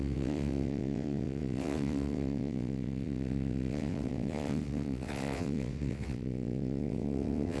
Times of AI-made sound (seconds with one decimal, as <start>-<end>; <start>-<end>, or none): 0.0-7.6